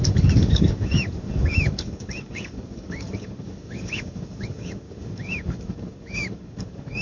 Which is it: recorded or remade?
remade